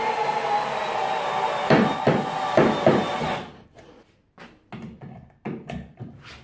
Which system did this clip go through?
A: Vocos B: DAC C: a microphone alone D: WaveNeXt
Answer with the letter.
C